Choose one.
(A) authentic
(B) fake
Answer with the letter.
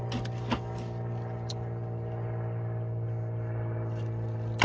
A